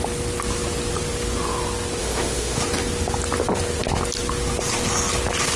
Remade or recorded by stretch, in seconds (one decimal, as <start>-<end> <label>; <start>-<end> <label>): 0.0-2.0 recorded; 2.0-2.6 remade; 2.6-5.6 recorded

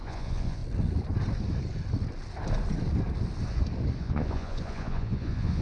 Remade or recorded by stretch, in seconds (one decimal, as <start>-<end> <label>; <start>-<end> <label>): 0.0-0.6 remade; 0.6-4.0 recorded; 4.0-5.6 remade

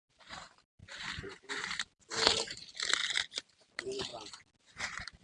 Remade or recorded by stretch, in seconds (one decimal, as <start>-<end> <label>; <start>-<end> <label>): 0.0-0.8 remade; 0.8-1.5 recorded; 1.5-4.1 remade; 4.1-4.6 recorded; 4.6-5.2 remade

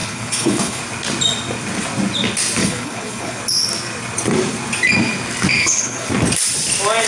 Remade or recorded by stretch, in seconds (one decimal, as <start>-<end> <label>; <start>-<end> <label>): 0.0-0.8 remade; 0.8-2.6 recorded; 2.6-3.4 remade; 3.4-5.6 recorded; 5.6-6.1 remade; 6.1-7.1 recorded

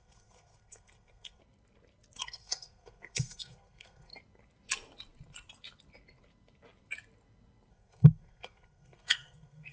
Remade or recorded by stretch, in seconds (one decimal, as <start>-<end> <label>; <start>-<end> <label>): 0.0-1.4 remade; 1.4-2.2 recorded; 2.2-4.1 remade; 4.1-7.7 recorded; 7.7-9.7 remade